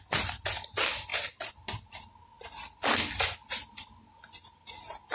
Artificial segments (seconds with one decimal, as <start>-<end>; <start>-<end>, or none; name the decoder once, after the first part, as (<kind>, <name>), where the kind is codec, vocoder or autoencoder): none